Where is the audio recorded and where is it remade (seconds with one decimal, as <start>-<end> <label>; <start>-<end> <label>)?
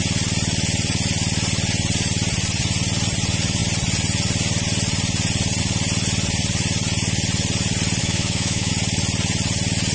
0.0-8.0 recorded; 8.0-8.7 remade; 8.7-9.9 recorded